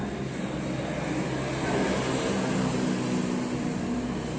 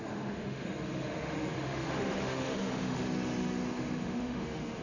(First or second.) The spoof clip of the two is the second